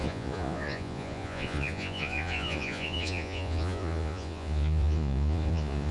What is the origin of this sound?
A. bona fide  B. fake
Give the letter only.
B